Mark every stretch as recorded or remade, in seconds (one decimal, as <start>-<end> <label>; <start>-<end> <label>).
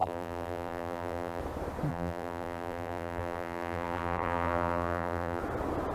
0.0-1.4 remade; 1.4-1.9 recorded; 1.9-5.4 remade; 5.4-5.9 recorded